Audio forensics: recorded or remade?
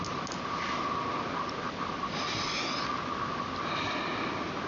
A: recorded